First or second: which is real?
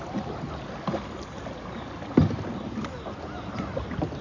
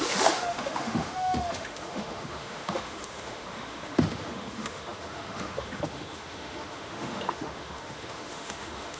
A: first